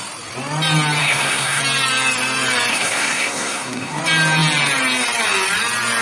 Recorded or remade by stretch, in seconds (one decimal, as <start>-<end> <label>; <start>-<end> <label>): 0.0-1.0 recorded; 1.0-1.6 remade; 1.6-2.7 recorded; 2.7-4.0 remade; 4.0-6.0 recorded